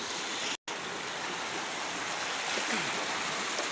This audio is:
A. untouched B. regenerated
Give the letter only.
A